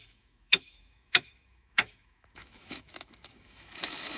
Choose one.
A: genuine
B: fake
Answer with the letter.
B